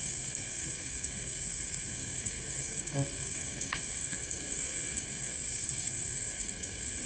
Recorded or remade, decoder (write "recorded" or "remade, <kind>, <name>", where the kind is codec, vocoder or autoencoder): remade, codec, SNAC